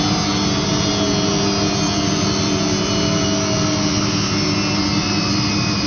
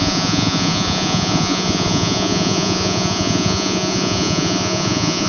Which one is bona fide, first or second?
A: first